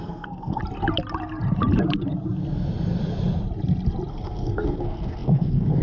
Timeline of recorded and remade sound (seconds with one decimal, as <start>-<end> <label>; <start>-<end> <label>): 0.0-0.6 remade; 0.6-4.1 recorded; 4.1-5.8 remade